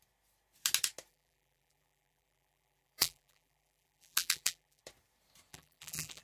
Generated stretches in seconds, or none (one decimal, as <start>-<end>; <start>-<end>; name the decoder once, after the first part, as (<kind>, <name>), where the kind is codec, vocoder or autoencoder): 1.1-4.8 (vocoder, BigVGAN v2); 5.5-6.2